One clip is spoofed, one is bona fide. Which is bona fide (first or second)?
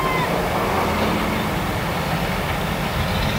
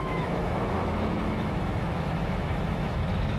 first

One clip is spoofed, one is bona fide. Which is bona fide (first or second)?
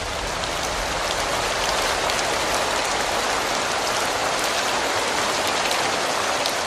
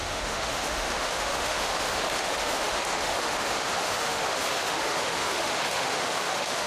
first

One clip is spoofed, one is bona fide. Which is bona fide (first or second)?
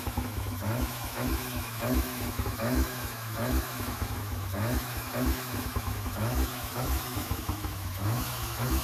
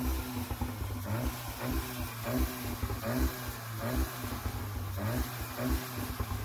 second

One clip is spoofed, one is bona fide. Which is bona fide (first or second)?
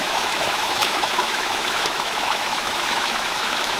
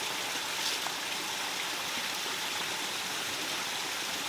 second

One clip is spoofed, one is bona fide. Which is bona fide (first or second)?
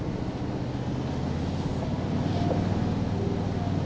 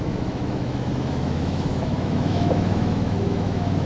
first